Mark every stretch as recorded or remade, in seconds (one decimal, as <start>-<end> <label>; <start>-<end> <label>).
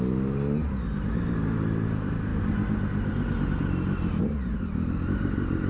0.0-5.7 recorded